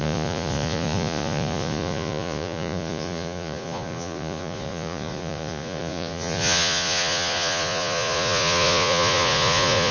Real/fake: fake